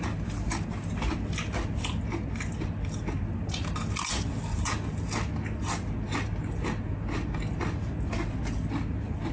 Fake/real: real